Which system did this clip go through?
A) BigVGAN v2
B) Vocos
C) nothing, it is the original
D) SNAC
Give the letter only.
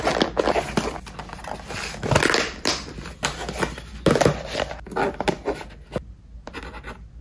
C